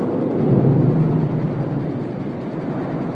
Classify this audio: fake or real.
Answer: real